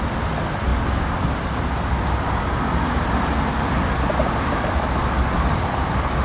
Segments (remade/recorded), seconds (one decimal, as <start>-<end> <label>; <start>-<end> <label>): 0.0-0.7 remade; 0.7-4.4 recorded; 4.4-6.2 remade